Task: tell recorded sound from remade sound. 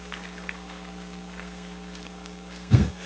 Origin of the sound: remade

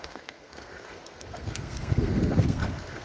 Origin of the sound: remade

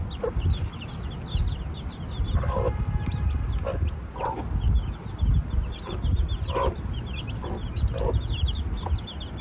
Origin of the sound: recorded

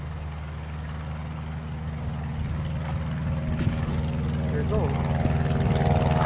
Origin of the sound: recorded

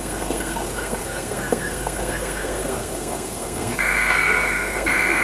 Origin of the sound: remade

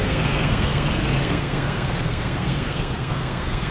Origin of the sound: remade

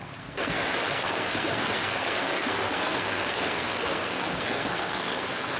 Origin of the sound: remade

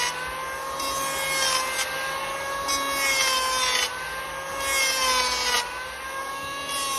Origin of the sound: recorded